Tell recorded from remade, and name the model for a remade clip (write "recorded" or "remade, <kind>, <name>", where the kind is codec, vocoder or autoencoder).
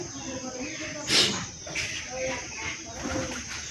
recorded